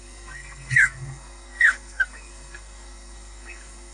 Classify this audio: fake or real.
fake